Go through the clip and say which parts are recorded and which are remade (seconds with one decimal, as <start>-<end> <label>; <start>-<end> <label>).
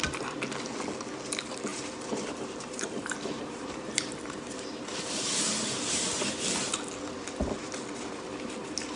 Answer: 0.0-1.7 recorded; 1.7-6.1 remade; 6.1-9.0 recorded